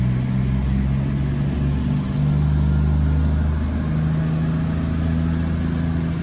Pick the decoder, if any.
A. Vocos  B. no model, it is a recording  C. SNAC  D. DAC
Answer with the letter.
B